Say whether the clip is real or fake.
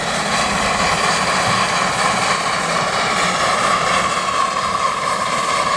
fake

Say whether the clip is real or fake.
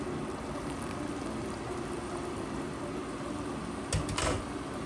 real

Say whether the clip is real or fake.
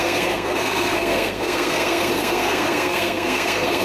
fake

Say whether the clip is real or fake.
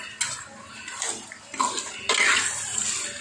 real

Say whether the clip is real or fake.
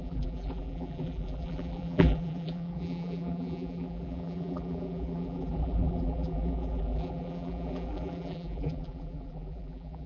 fake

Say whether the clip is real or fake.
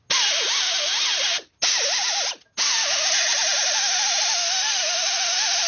real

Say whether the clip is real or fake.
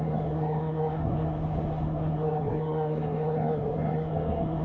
fake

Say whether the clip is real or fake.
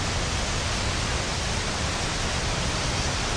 real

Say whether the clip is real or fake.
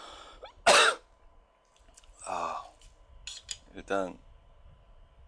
real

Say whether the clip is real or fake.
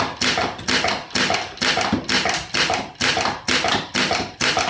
real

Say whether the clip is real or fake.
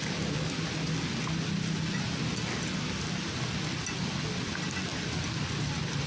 real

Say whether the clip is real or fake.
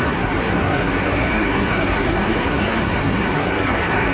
fake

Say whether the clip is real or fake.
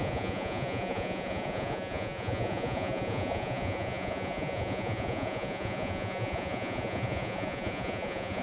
fake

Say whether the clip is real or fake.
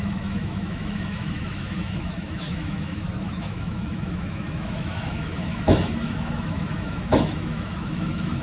fake